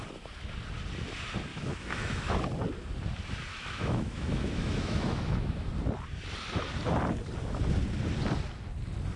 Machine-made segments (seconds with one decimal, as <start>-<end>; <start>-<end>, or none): 1.5-2.2; 3.5-5.7